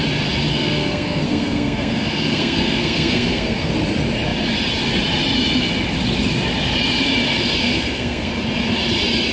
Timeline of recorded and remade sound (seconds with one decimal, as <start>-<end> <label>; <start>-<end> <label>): 0.0-0.5 recorded; 0.5-3.7 remade; 3.7-7.6 recorded; 7.6-8.3 remade; 8.3-9.3 recorded